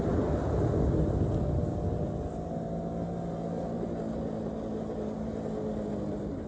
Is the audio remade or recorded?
recorded